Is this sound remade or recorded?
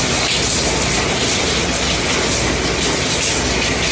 recorded